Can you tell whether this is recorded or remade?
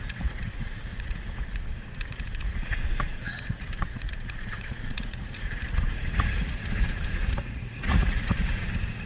remade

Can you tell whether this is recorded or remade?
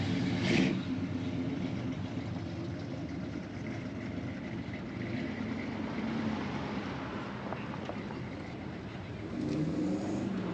recorded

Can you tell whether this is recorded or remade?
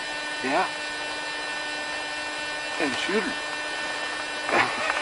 recorded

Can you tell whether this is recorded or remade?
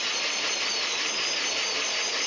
recorded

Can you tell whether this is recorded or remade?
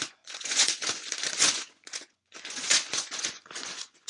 remade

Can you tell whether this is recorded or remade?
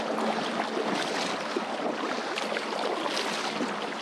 recorded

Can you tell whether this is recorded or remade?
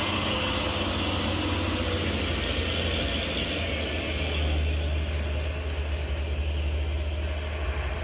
recorded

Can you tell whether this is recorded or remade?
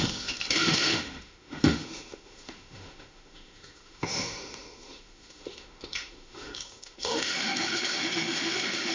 remade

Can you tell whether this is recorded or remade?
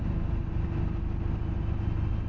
recorded